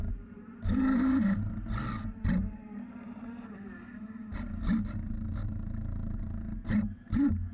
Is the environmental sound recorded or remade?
recorded